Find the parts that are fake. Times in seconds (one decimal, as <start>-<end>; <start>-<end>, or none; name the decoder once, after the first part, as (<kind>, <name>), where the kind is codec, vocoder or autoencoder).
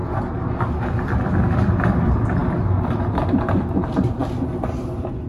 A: 2.0-2.4 (vocoder, BigVGAN v2); 2.9-5.3